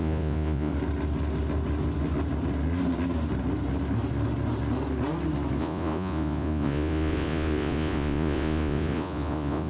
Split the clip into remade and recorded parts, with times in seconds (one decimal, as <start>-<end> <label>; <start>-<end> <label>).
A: 0.0-0.7 remade; 0.7-5.6 recorded; 5.6-9.7 remade